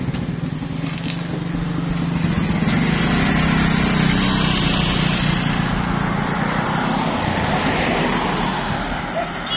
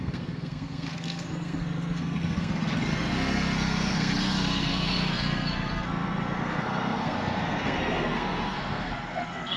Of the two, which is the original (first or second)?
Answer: first